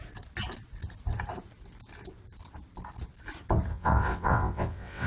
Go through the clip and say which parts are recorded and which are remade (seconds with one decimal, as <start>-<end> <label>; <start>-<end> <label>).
0.0-3.7 recorded; 3.7-5.1 remade